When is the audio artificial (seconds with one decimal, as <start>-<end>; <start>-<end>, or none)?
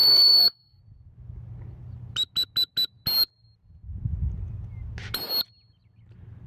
0.0-0.8